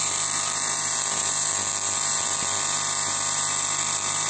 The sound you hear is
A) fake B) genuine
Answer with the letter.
A